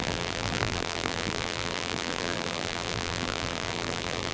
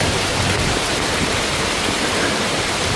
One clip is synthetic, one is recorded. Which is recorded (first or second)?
second